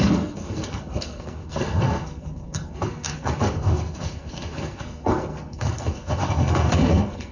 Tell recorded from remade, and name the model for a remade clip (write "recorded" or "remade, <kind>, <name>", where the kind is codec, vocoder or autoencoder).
remade, codec, SNAC